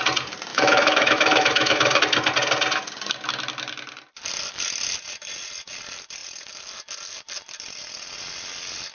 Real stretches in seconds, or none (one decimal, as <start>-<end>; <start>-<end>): 0.0-0.5; 2.0-8.9